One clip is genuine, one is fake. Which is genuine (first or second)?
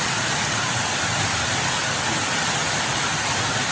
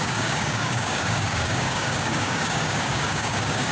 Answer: first